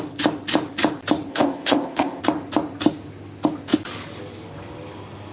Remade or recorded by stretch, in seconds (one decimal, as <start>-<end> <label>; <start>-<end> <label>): 0.0-1.3 recorded; 1.3-2.2 remade; 2.2-5.3 recorded